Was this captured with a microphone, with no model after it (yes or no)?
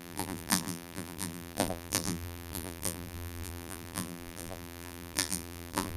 no